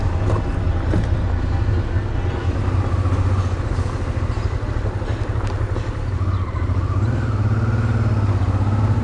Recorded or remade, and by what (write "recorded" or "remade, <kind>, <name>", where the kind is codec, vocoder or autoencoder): recorded